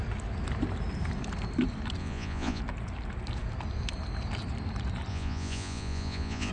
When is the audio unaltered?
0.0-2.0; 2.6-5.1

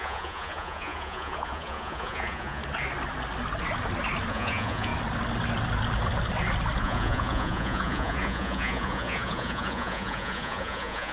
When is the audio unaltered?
2.6-4.3; 4.9-6.8

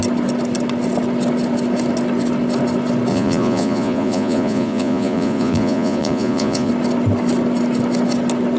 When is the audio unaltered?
0.0-3.1; 6.7-8.6